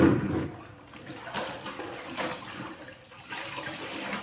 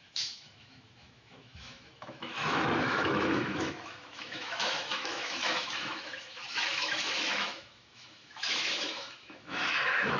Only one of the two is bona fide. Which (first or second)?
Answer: first